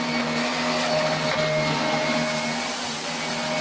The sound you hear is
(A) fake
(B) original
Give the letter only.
B